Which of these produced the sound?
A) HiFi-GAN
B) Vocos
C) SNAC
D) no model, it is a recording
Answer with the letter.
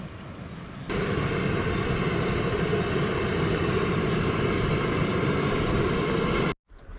D